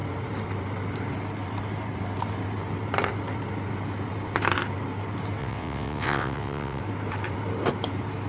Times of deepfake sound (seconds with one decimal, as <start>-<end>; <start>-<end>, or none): 5.4-6.8